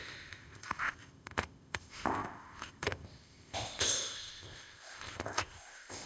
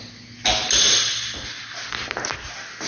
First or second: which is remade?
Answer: first